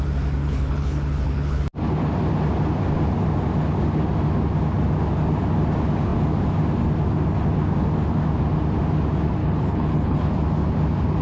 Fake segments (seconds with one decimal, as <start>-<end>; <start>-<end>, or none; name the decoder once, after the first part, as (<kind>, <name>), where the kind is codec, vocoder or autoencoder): 0.4-1.6 (codec, HILCodec); 9.4-10.3